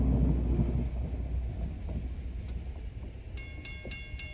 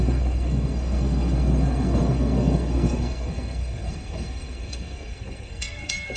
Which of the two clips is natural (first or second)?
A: first